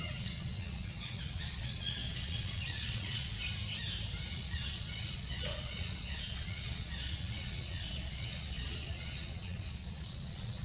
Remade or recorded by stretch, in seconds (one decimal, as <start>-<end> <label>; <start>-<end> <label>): 0.0-3.3 remade; 3.3-4.3 recorded; 4.3-10.6 remade